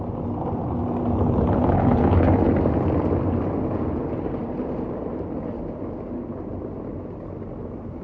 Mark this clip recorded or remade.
recorded